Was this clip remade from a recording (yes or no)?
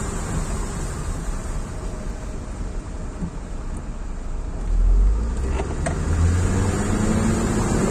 no